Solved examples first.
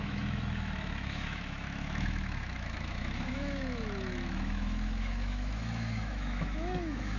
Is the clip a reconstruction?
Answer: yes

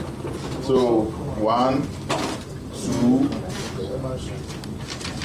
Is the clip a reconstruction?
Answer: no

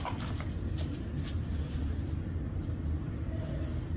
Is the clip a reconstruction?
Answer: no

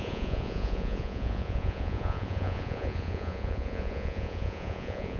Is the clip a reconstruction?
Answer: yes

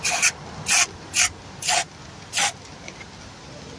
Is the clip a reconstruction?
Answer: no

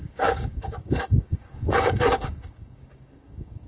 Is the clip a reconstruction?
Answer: yes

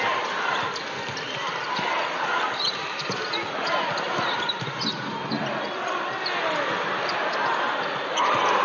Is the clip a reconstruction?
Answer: no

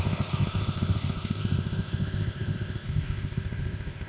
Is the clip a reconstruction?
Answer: yes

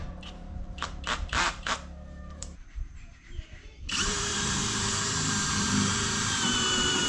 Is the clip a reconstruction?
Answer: yes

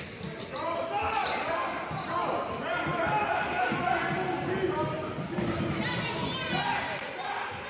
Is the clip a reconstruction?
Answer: no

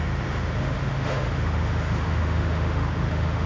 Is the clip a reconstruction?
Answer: yes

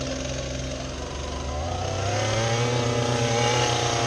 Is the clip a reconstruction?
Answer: no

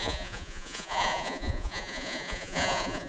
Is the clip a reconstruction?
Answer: yes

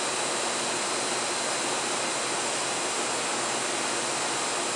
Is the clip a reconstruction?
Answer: no